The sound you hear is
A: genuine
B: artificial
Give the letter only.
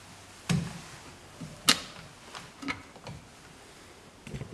A